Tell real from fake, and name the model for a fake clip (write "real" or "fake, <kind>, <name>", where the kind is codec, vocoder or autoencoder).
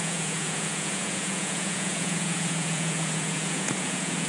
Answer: fake, vocoder, Vocos